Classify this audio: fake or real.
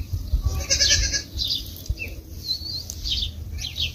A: real